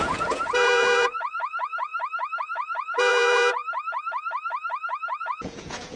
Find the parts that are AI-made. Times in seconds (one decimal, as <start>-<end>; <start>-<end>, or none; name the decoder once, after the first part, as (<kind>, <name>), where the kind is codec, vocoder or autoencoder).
0.0-1.9 (vocoder, Vocos); 2.4-3.6; 5.2-6.0